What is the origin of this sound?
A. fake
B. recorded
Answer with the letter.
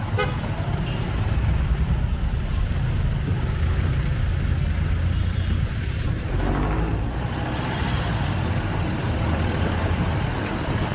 B